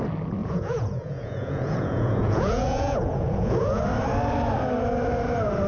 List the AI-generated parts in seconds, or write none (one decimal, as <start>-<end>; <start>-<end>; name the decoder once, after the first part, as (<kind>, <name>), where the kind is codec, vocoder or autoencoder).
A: 0.4-3.8 (vocoder, Vocos)